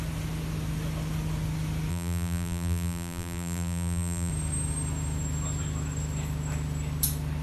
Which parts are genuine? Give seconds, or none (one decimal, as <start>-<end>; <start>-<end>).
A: 0.0-1.9; 4.3-7.4